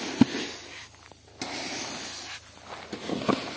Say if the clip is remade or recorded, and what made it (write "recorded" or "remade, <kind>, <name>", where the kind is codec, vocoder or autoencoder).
recorded